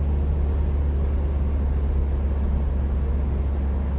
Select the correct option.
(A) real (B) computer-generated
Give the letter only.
A